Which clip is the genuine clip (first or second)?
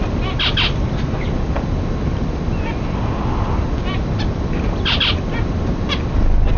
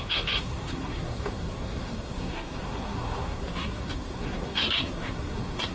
first